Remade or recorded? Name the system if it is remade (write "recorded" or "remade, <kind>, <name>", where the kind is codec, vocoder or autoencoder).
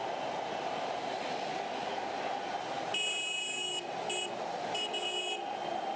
recorded